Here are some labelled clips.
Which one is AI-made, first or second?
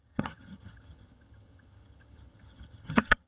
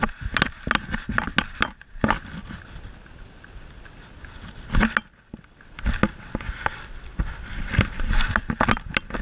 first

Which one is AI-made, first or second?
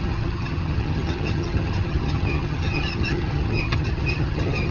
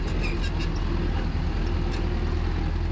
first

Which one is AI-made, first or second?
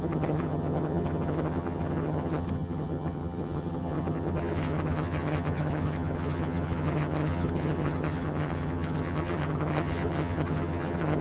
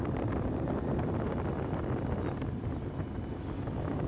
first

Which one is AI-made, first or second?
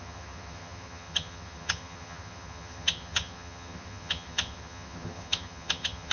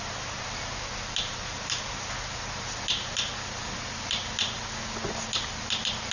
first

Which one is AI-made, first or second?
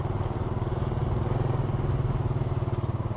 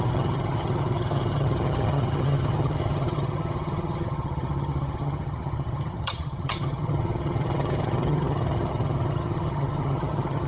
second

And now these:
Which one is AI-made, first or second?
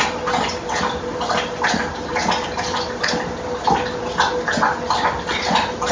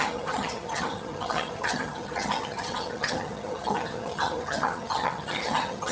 second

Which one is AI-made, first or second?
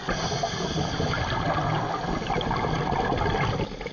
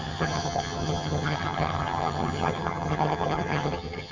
second